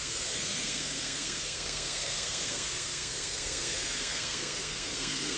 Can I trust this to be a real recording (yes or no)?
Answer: no